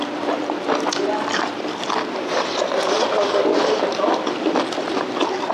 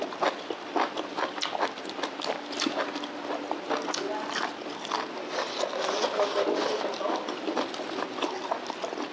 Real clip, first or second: second